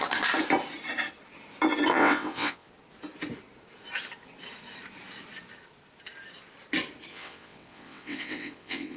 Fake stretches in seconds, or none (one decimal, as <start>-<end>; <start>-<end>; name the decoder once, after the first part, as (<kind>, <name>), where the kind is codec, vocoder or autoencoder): 1.9-2.7 (vocoder, WaveNeXt); 7.1-9.0